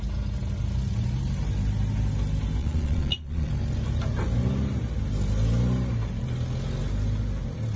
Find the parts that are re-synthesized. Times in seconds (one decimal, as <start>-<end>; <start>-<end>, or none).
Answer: 2.6-3.5